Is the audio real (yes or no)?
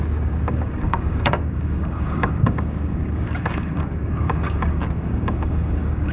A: no